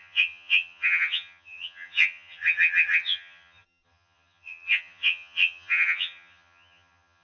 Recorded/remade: remade